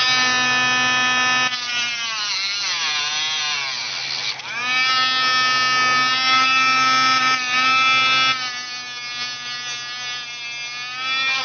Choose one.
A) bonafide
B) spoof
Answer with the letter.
A